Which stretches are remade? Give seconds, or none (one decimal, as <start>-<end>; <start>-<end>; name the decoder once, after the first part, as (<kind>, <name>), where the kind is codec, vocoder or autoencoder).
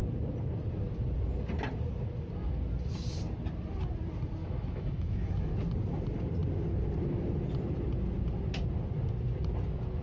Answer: 4.4-5.5 (autoencoder, DAC-VAE)